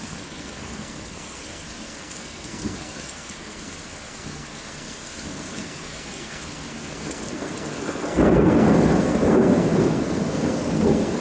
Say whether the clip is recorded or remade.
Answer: remade